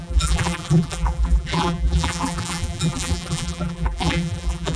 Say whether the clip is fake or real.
fake